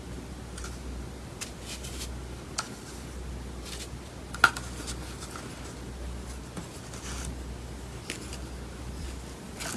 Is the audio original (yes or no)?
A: yes